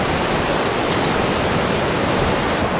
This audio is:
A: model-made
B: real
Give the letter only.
B